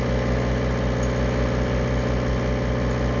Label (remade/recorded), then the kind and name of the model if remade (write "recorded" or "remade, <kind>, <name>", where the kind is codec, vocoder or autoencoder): recorded